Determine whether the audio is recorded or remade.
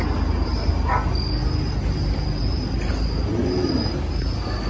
recorded